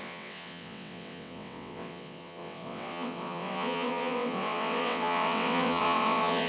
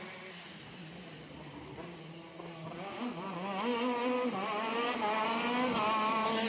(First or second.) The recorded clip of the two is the second